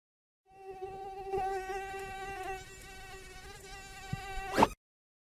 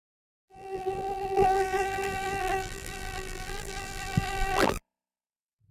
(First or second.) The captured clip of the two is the first